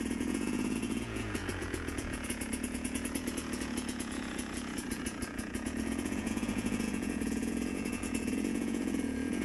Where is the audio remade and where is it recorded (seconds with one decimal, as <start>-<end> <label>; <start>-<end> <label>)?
0.0-9.4 remade